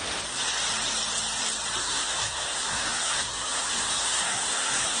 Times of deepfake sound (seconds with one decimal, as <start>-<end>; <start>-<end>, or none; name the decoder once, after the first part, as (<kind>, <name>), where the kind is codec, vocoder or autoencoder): 1.8-5.0 (codec, SNAC)